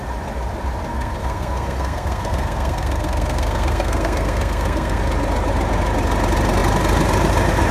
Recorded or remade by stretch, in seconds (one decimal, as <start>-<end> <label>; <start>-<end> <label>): 0.0-0.9 recorded; 0.9-5.0 remade; 5.0-7.7 recorded